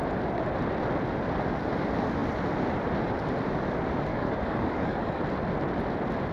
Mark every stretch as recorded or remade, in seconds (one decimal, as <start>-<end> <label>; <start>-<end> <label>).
0.0-4.1 recorded; 4.1-5.2 remade; 5.2-6.3 recorded